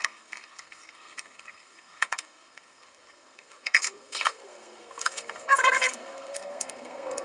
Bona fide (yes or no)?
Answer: no